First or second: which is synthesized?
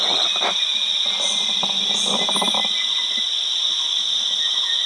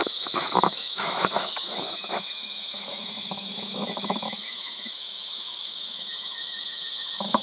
second